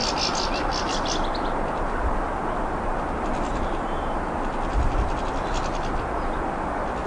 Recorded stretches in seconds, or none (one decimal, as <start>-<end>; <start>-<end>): 0.0-7.1